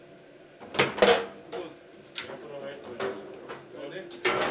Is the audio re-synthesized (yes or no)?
no